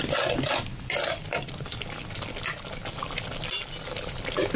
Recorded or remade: recorded